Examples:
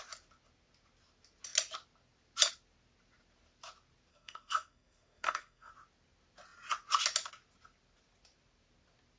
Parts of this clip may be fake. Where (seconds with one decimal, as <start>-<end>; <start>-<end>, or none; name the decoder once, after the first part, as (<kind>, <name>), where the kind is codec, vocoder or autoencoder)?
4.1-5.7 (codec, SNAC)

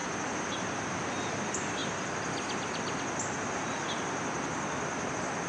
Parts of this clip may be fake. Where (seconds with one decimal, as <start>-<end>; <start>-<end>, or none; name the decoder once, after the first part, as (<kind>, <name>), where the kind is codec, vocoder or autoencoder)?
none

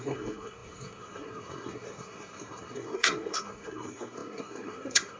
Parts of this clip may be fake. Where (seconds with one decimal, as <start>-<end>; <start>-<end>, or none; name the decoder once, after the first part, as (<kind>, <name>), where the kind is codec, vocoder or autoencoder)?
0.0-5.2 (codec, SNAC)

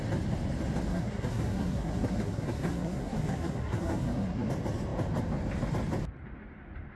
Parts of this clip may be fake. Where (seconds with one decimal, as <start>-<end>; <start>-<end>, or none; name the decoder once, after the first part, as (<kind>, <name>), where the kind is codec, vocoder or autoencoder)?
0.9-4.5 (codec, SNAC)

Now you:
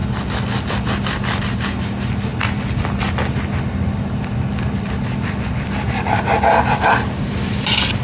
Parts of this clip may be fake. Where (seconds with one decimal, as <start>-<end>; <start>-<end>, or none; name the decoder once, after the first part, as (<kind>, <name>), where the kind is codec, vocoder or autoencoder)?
none